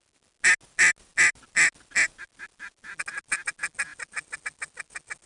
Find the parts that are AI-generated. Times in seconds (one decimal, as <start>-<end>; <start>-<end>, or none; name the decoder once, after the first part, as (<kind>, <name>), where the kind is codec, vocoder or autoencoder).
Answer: none